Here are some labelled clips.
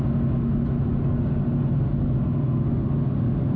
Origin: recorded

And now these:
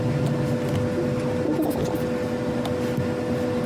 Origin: recorded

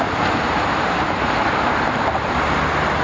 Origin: recorded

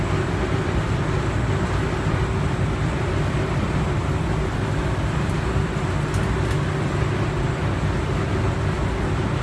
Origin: recorded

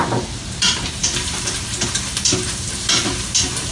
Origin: remade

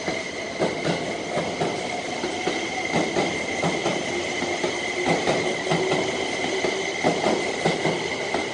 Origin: recorded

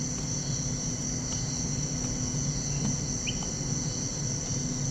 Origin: recorded